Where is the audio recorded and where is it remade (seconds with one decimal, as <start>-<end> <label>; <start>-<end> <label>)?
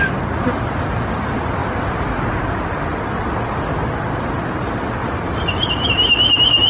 0.0-1.6 recorded; 1.6-2.4 remade; 2.4-5.0 recorded; 5.0-5.9 remade; 5.9-6.7 recorded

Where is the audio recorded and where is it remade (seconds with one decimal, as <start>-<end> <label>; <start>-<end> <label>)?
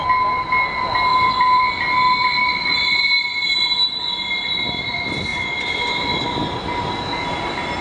0.0-1.1 recorded; 1.1-1.6 remade; 1.6-2.2 recorded; 2.2-4.0 remade; 4.0-5.3 recorded; 5.3-6.4 remade; 6.4-7.8 recorded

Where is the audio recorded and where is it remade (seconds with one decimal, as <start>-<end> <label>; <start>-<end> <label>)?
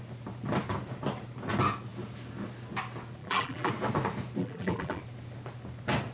0.0-3.2 recorded; 3.2-3.7 remade; 3.7-4.4 recorded; 4.4-5.0 remade; 5.0-6.1 recorded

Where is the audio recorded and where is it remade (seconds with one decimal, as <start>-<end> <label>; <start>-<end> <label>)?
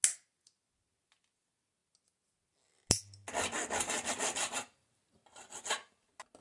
0.0-6.4 recorded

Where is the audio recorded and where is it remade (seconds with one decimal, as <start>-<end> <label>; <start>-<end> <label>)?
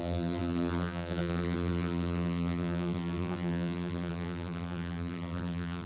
0.0-5.9 remade